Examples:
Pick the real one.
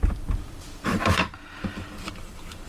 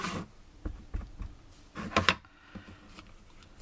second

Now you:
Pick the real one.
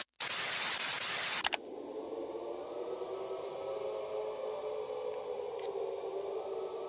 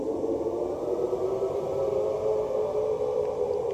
first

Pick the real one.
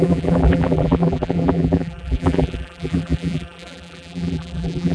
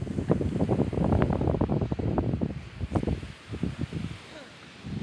second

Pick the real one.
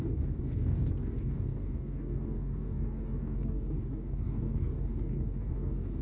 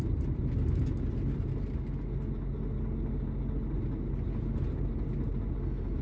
second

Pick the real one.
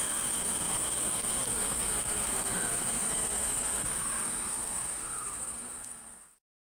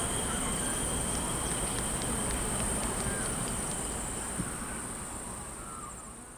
second